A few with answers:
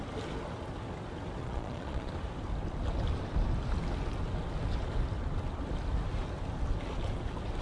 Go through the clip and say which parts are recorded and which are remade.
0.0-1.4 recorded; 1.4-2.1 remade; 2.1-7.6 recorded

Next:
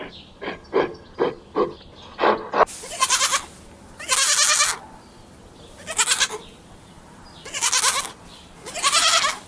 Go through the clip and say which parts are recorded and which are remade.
0.0-9.5 recorded

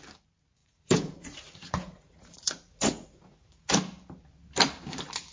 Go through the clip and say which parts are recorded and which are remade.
0.0-0.6 recorded; 0.6-3.7 remade; 3.7-5.3 recorded

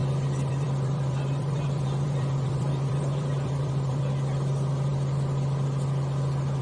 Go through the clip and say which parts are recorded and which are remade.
0.0-4.0 remade; 4.0-6.6 recorded